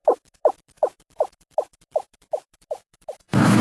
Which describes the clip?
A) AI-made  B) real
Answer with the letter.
A